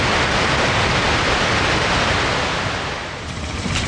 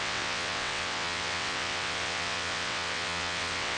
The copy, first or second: second